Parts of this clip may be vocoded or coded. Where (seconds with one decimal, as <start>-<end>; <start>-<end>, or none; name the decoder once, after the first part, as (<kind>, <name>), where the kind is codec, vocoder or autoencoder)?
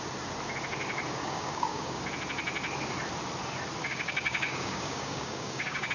1.2-2.0 (codec, DAC); 3.8-5.9